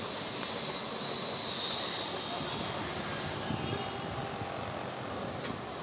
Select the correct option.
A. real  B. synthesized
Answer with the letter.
A